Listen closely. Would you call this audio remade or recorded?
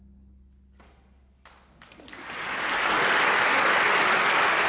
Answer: recorded